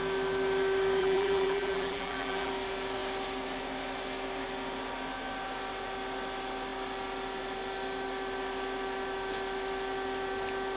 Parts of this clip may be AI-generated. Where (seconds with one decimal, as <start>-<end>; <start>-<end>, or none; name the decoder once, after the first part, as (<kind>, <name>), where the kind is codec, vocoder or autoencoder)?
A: 1.0-2.5 (vocoder, BigVGAN v2)